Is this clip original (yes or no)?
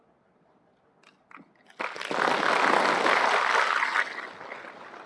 yes